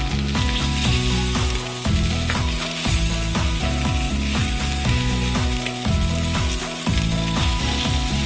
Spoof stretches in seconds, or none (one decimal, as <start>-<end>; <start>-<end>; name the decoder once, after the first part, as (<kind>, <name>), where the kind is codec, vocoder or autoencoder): none